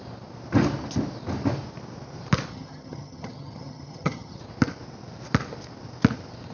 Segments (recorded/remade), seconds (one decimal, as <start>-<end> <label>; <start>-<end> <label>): 0.0-2.5 recorded; 2.5-4.4 remade; 4.4-6.5 recorded